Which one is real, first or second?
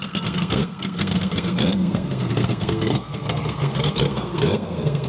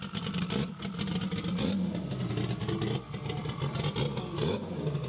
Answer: second